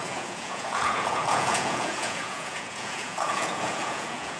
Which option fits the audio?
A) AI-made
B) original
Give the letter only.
A